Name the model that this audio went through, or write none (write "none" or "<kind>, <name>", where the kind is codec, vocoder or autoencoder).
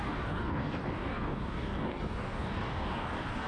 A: codec, DAC